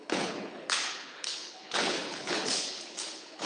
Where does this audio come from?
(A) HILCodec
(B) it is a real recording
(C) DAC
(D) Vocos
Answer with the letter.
A